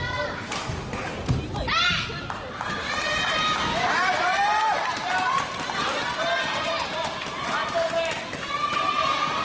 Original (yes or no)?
no